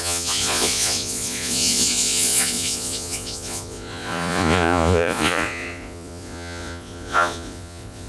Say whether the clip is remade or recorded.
remade